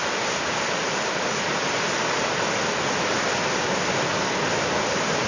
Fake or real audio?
real